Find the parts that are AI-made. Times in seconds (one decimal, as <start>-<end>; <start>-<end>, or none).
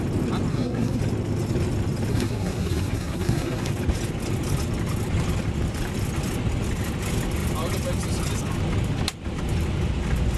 0.5-1.0; 2.1-3.7